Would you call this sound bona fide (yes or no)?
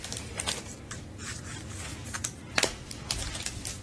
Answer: no